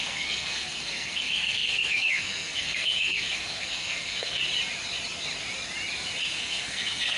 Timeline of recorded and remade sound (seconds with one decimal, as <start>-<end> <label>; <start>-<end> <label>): 0.0-4.4 remade; 4.4-6.2 recorded; 6.2-7.2 remade